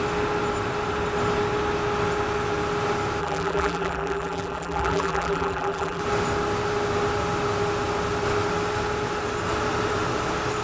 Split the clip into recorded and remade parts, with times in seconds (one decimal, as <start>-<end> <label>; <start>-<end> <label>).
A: 0.0-3.2 recorded; 3.2-6.0 remade; 6.0-10.6 recorded